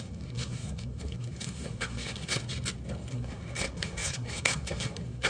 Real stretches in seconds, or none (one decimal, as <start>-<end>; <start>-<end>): 2.4-3.1